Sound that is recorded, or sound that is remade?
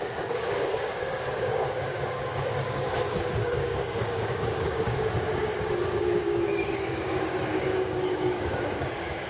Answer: remade